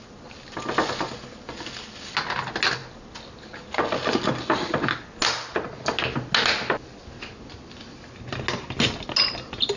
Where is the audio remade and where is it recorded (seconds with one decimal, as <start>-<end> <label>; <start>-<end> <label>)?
0.0-9.8 recorded